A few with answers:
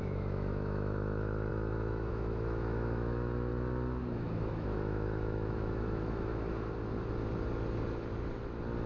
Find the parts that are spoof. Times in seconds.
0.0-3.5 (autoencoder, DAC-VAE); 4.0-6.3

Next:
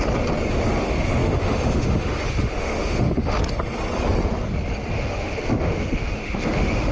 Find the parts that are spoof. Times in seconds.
0.5-3.4 (autoencoder, DAC-VAE); 4.9-6.9

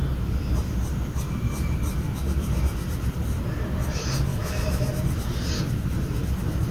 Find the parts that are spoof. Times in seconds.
4.3-4.9 (autoencoder, DAC-VAE)